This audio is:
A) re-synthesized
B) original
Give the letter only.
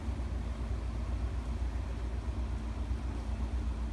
B